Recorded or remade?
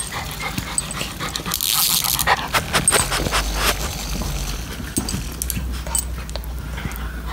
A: recorded